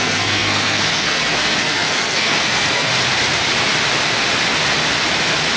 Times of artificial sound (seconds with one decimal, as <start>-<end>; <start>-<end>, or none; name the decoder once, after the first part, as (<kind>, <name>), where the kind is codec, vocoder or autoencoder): 0.0-2.9 (codec, SNAC)